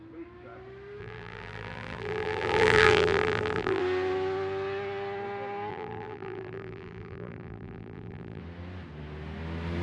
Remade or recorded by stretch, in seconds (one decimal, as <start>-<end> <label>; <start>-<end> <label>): 0.0-1.0 recorded; 1.0-3.8 remade; 3.8-5.7 recorded; 5.7-8.4 remade; 8.4-9.8 recorded